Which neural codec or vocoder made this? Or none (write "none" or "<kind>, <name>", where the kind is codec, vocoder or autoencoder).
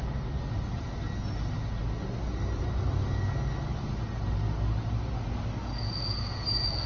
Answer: none